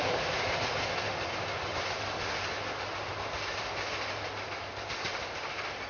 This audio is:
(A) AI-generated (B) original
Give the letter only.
B